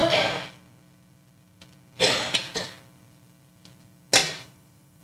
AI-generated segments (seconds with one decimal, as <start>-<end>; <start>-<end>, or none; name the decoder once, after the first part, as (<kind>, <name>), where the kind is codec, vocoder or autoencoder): 4.2-5.0 (vocoder, BigVGAN v2)